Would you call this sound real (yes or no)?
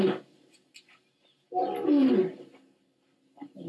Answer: yes